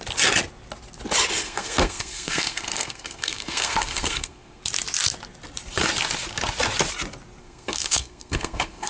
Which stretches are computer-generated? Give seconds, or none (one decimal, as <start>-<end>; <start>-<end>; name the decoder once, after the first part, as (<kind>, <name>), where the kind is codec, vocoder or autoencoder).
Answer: 1.4-4.6 (codec, SNAC); 7.4-8.9